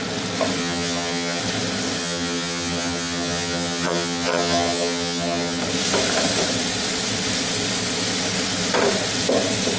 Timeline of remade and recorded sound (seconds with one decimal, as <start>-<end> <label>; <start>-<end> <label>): 0.0-0.6 recorded; 0.6-1.4 remade; 1.4-2.0 recorded; 2.0-5.6 remade; 5.6-9.8 recorded